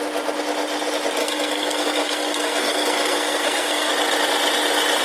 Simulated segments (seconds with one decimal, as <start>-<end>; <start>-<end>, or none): 1.2-3.9